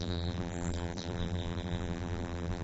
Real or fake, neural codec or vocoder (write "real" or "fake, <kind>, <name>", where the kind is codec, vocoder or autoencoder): fake, vocoder, BigVGAN v2